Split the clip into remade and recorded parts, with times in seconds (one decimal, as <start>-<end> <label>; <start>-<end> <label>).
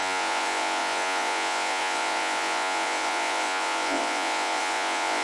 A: 0.0-5.2 remade